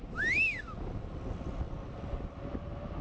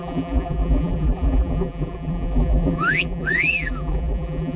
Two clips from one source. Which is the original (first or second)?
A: first